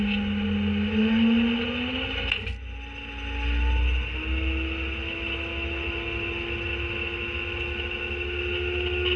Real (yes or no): yes